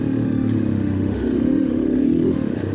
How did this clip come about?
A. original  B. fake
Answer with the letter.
B